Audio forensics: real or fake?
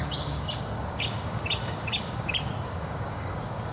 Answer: fake